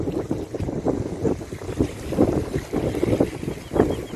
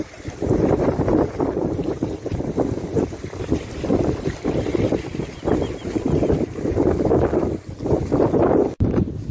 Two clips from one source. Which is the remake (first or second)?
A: second